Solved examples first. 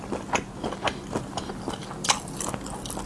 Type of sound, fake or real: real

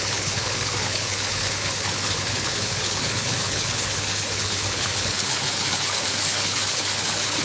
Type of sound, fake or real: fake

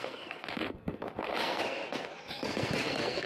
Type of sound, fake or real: fake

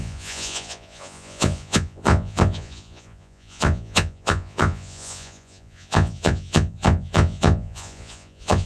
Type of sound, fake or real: fake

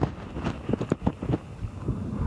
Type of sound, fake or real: real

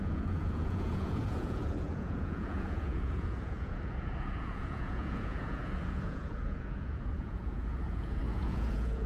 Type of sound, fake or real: fake